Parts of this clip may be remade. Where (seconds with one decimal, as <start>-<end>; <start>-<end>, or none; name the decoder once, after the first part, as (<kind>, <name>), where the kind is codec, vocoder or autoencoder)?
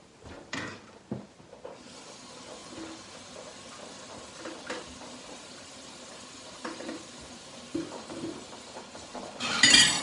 0.0-0.7 (vocoder, BigVGAN v2); 1.9-2.6; 5.1-10.0